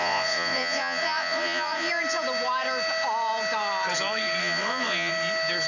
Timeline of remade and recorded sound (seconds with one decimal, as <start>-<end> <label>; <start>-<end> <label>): 0.0-1.9 remade; 1.9-4.4 recorded; 4.4-5.1 remade; 5.1-5.7 recorded